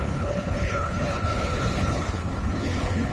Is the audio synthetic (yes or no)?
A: yes